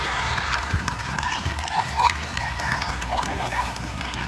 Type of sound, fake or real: fake